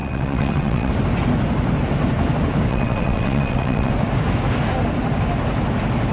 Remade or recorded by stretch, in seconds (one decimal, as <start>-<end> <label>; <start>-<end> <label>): 0.0-0.9 remade; 0.9-2.7 recorded; 2.7-3.9 remade; 3.9-6.1 recorded

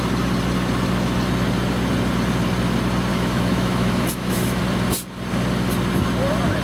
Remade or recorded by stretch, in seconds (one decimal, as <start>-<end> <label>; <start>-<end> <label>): 0.0-3.1 recorded; 3.1-4.6 remade; 4.6-6.6 recorded